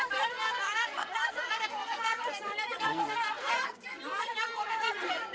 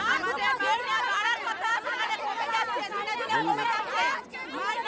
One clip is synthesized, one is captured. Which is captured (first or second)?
second